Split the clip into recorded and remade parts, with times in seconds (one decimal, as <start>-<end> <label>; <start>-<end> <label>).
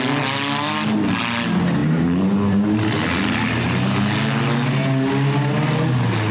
0.0-6.3 recorded